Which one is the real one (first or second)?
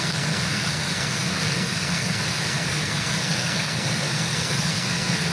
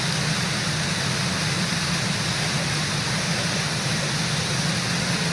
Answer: second